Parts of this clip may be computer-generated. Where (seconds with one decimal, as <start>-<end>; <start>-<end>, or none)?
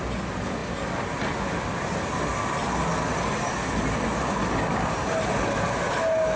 none